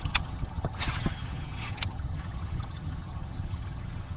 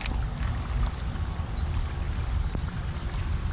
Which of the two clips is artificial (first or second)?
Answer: first